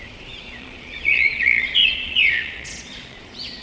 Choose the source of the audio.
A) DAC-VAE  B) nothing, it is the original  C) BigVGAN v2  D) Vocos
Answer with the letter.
D